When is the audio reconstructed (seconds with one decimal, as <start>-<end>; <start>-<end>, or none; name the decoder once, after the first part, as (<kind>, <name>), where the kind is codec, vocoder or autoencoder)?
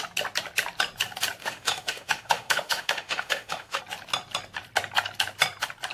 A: 1.4-3.8 (autoencoder, DAC-VAE)